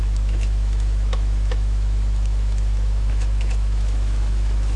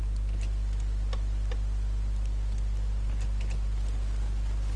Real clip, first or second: second